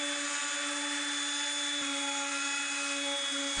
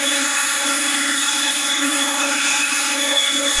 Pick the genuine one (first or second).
first